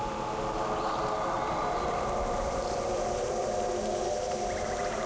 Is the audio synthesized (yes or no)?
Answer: no